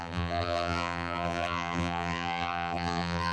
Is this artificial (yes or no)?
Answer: yes